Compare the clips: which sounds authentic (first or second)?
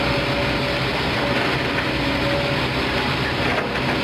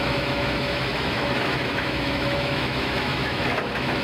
first